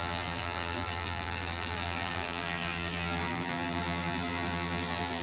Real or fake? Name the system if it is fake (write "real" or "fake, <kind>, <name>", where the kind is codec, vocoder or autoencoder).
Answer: fake, vocoder, BigVGAN v2